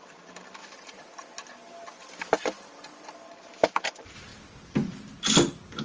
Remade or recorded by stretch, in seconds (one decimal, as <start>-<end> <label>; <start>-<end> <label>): 0.0-5.8 recorded